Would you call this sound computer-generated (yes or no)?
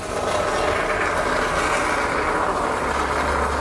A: no